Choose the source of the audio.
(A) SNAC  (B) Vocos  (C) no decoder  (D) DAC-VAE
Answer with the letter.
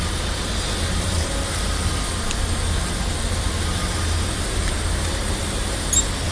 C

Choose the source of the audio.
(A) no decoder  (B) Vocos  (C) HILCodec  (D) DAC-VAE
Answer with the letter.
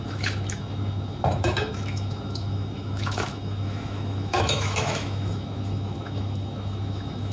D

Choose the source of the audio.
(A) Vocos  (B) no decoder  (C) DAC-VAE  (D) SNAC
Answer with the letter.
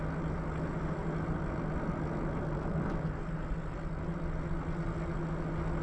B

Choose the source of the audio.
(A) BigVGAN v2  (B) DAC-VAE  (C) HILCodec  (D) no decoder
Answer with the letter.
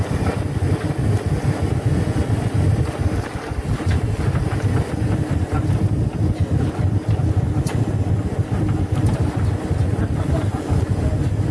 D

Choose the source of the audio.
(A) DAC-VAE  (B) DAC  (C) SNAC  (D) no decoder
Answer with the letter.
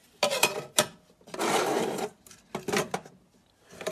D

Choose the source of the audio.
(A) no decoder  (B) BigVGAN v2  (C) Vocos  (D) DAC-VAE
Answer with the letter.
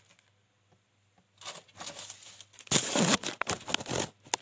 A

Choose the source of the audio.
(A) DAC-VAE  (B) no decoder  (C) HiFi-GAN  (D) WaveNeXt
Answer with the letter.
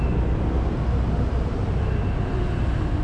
B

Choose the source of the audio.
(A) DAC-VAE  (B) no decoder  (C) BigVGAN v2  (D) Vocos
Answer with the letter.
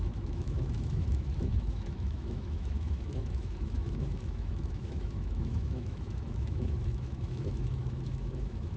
A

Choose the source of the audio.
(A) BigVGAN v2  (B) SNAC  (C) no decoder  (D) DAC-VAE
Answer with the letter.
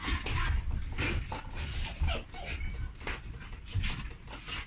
C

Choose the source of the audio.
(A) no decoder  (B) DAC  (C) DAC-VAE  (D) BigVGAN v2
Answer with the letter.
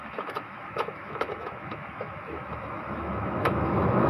C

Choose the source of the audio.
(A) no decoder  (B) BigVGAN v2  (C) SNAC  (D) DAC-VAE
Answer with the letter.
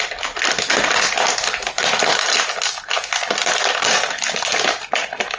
A